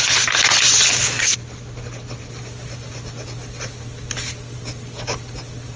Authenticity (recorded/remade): recorded